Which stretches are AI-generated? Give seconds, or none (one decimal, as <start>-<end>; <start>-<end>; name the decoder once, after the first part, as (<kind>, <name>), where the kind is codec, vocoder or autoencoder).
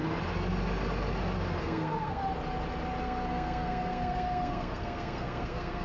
1.6-2.2 (codec, SNAC); 3.0-5.8